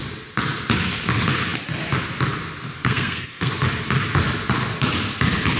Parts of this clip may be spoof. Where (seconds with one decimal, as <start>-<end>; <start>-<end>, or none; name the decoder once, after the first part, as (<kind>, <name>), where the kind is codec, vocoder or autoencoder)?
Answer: 2.8-3.5 (codec, SNAC)